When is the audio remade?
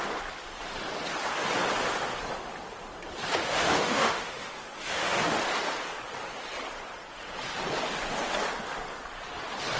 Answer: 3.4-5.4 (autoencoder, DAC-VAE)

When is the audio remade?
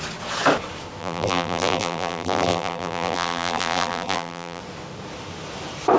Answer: 1.0-4.6 (vocoder, BigVGAN v2)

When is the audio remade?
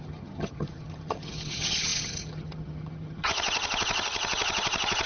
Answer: 0.0-5.1 (vocoder, HiFi-GAN)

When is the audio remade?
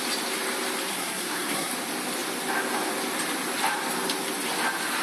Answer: 0.9-1.7 (codec, SNAC)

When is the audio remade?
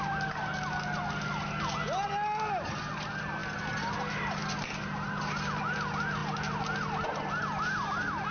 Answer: none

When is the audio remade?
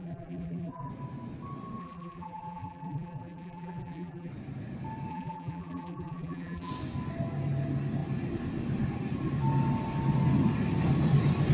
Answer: 0.0-0.9 (vocoder, BigVGAN v2); 1.8-4.3; 5.1-6.7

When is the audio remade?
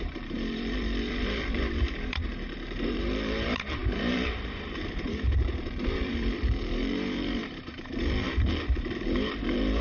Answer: 0.0-9.8 (vocoder, BigVGAN v2)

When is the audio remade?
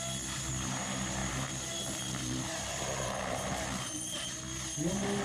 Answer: 1.2-4.3 (vocoder, BigVGAN v2)